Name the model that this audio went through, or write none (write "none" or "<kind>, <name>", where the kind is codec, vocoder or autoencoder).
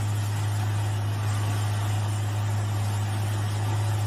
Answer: none